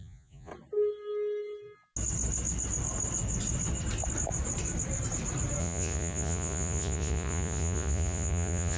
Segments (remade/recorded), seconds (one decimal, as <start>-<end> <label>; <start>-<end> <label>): 0.0-0.5 remade; 0.5-5.6 recorded; 5.6-8.8 remade

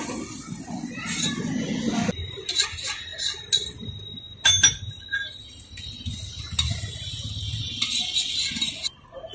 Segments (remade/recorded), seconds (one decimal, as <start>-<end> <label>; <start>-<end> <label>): 0.0-9.3 recorded

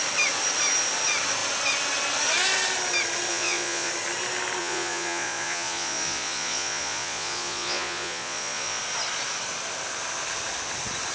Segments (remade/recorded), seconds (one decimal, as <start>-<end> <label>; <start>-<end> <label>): 0.0-3.3 recorded; 3.3-3.9 remade; 3.9-4.6 recorded; 4.6-8.8 remade; 8.8-11.1 recorded

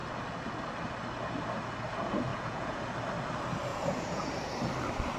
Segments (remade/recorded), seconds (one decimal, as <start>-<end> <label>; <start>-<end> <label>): 0.0-2.3 recorded; 2.3-2.8 remade; 2.8-3.7 recorded; 3.7-4.3 remade; 4.3-5.2 recorded